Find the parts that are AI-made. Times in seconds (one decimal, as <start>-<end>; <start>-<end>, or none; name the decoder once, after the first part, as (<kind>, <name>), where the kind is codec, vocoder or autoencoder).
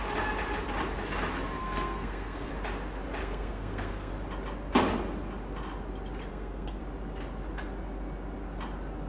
1.6-2.5 (codec, SNAC); 3.2-4.1; 6.3-6.8